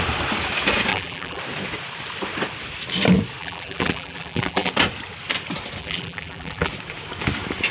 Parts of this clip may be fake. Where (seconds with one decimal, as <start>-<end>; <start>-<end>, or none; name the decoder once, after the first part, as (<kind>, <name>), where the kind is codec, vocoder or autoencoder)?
0.9-1.4 (vocoder, BigVGAN v2); 3.4-4.7; 5.8-6.7